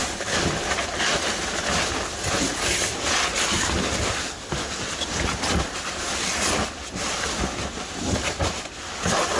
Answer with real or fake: real